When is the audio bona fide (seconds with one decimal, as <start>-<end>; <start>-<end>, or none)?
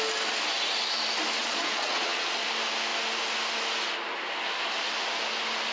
0.0-1.4; 2.5-5.7